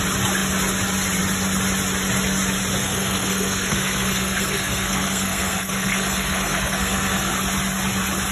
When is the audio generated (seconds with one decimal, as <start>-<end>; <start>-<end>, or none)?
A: 2.8-7.3